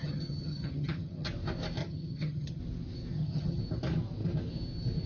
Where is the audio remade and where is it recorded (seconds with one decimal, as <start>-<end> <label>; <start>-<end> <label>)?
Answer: 0.0-1.3 remade; 1.3-1.8 recorded; 1.8-2.6 remade; 2.6-3.1 recorded; 3.1-3.6 remade; 3.6-5.1 recorded